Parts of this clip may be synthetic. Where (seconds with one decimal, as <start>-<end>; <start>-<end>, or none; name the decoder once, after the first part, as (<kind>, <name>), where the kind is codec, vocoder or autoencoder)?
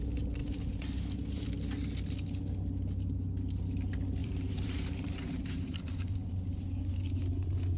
0.4-1.5 (vocoder, BigVGAN v2); 4.2-6.3